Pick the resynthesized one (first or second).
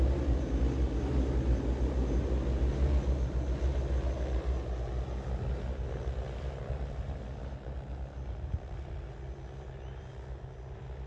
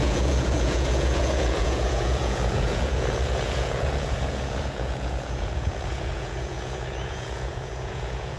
second